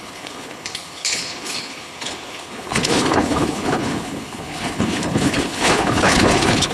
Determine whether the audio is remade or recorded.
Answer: remade